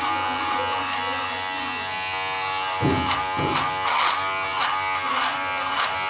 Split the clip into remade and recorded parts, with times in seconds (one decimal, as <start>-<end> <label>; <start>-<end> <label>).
0.0-6.1 recorded